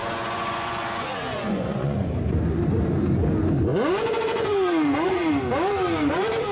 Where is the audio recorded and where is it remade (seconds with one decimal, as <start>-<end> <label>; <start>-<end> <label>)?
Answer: 0.0-2.1 remade; 2.1-3.7 recorded; 3.7-5.3 remade; 5.3-6.5 recorded